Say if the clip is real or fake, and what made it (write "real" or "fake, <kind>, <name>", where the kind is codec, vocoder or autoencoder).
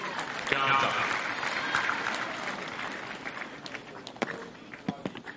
real